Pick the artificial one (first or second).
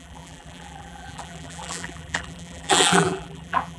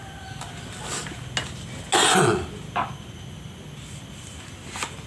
first